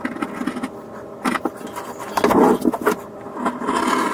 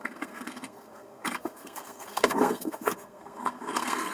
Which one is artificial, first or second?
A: second